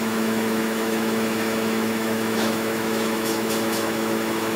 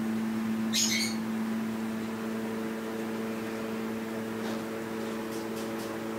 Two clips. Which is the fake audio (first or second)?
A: first